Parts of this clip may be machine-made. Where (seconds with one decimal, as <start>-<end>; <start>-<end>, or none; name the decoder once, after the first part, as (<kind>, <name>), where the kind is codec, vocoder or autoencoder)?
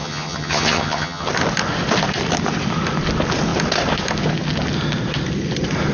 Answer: 0.0-1.3 (vocoder, HiFi-GAN)